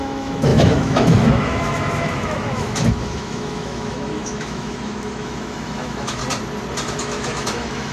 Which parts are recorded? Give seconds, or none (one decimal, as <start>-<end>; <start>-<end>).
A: 6.2-7.0